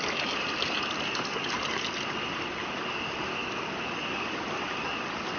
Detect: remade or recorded recorded